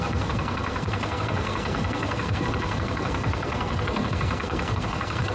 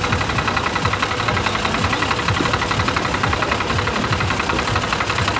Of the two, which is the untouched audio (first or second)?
second